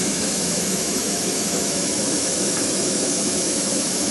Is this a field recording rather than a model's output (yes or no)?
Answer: no